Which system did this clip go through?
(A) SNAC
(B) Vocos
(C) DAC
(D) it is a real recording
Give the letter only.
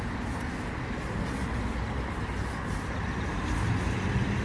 D